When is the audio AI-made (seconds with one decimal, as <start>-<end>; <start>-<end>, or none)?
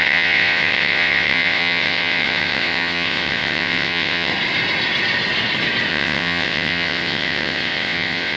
0.0-4.3; 5.9-8.4